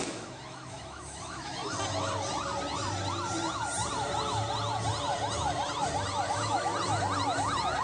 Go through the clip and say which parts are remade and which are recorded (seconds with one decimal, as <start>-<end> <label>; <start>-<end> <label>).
0.0-1.6 remade; 1.6-6.3 recorded; 6.3-6.7 remade; 6.7-7.8 recorded